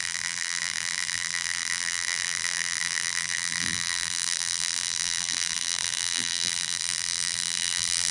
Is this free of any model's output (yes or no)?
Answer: no